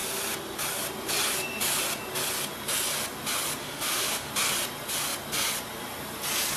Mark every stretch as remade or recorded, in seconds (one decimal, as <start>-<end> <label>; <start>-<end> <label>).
0.0-3.6 recorded; 3.6-4.3 remade; 4.3-6.6 recorded